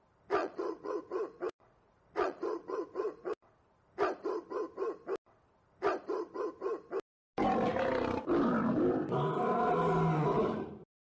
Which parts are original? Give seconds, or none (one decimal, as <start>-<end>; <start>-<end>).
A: 0.0-0.4; 3.4-11.0